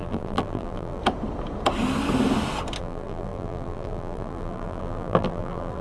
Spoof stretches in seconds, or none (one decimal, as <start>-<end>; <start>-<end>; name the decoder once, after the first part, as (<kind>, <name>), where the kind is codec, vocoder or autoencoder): 0.0-1.0 (vocoder, BigVGAN v2); 2.8-5.8